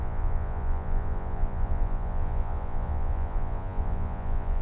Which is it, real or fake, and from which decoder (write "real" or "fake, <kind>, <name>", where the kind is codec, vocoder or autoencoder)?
fake, vocoder, Vocos